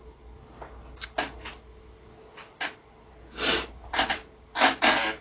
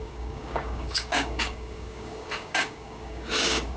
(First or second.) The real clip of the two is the first